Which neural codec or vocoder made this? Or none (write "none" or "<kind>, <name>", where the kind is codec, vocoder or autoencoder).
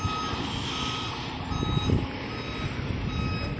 none